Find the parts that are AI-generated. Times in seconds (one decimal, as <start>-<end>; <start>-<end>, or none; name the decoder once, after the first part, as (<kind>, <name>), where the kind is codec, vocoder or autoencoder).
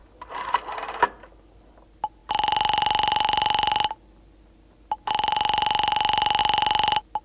none